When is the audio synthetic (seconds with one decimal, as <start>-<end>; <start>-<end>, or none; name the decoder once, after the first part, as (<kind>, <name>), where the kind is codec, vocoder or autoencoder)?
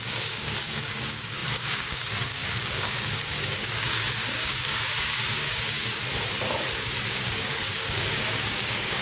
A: 0.0-6.0 (codec, DAC); 7.1-9.0